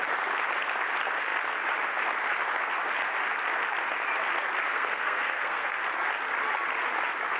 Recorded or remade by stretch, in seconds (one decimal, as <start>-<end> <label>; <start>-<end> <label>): 0.0-4.7 recorded; 4.7-5.8 remade; 5.8-7.4 recorded